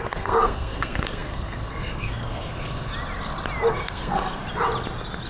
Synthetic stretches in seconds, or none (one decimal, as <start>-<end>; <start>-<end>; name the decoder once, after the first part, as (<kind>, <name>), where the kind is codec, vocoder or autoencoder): 0.0-2.9 (codec, SNAC); 3.7-4.4